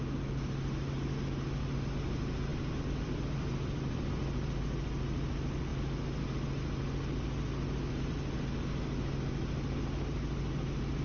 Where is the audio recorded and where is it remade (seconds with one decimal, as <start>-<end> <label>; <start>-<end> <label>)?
0.0-2.5 recorded; 2.5-4.6 remade; 4.6-11.0 recorded

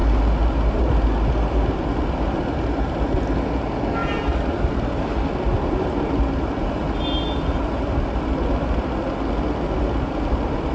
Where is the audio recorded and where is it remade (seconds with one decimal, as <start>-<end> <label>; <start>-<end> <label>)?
0.0-10.7 recorded

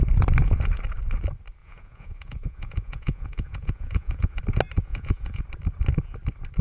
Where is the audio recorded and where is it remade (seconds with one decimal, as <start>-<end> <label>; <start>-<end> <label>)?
0.0-1.6 recorded; 1.6-4.4 remade; 4.4-4.9 recorded; 4.9-5.4 remade; 5.4-6.6 recorded

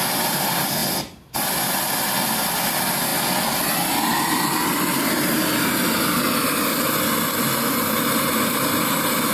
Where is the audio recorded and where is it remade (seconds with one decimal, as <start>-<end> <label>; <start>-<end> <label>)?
0.0-9.3 recorded

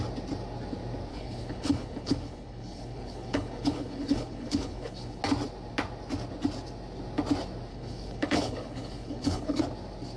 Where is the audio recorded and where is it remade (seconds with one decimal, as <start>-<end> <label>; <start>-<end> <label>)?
0.0-1.1 recorded; 1.1-5.2 remade; 5.2-7.7 recorded; 7.7-9.6 remade; 9.6-10.2 recorded

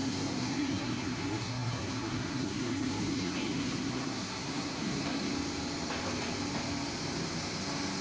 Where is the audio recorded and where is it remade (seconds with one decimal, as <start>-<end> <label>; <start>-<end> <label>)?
0.0-5.3 remade; 5.3-8.0 recorded

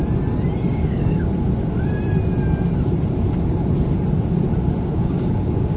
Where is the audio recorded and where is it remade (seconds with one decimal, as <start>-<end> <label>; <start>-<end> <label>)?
0.0-0.7 recorded; 0.7-1.3 remade; 1.3-4.8 recorded; 4.8-5.8 remade